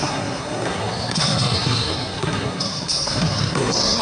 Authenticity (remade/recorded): remade